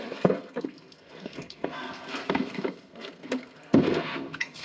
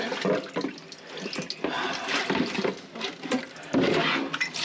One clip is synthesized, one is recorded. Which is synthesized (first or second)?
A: first